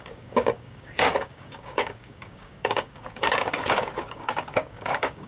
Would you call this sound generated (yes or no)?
yes